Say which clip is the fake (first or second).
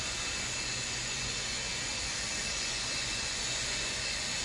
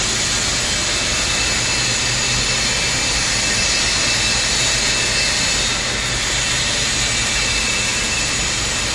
first